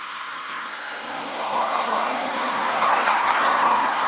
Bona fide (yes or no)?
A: no